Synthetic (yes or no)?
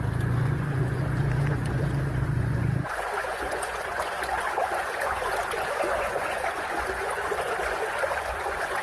yes